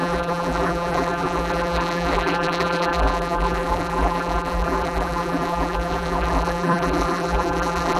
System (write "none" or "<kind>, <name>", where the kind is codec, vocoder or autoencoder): vocoder, BigVGAN v2